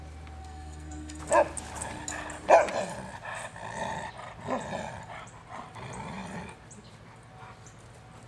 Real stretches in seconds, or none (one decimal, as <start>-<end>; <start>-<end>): 0.0-0.4; 1.2-8.3